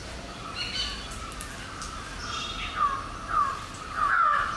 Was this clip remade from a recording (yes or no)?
no